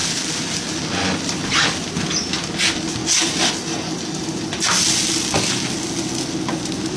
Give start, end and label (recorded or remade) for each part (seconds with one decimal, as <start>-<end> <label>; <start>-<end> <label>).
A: 0.0-0.7 remade; 0.7-3.0 recorded; 3.0-3.5 remade; 3.5-7.0 recorded